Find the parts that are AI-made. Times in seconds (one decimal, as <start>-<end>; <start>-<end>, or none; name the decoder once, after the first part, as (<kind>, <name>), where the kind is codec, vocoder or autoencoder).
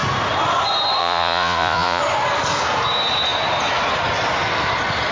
1.0-2.0 (vocoder, Vocos)